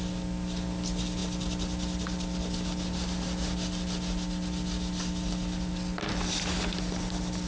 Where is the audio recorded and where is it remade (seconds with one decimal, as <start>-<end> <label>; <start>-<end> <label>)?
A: 0.0-7.5 recorded